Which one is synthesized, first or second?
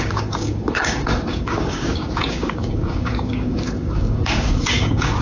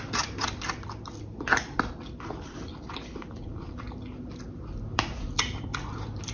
first